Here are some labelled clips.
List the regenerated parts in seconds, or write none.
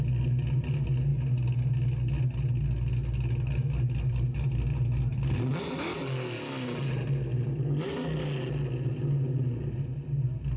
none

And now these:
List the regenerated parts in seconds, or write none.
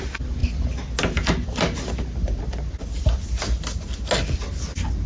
none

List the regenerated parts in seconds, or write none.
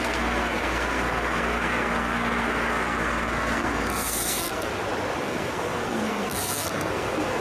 0.0-4.7 (codec, SNAC); 5.2-7.4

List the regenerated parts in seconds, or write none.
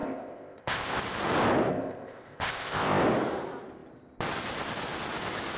0.0-1.0 (codec, ZipCodec); 1.7-3.0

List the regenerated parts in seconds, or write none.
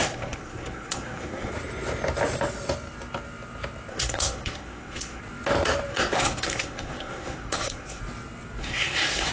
0.0-1.5 (codec, SNAC); 3.9-5.2; 5.9-8.0; 8.6-9.3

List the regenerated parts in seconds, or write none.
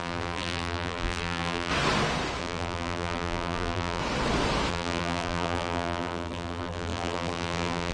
0.0-1.7 (vocoder, BigVGAN v2); 2.4-4.0; 4.7-7.9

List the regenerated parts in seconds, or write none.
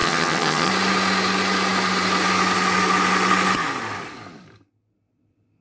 0.0-0.7 (vocoder, HiFi-GAN)